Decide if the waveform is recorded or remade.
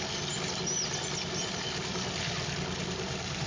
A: recorded